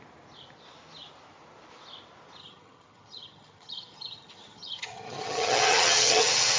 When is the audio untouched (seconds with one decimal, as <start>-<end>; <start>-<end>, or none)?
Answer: 0.0-2.4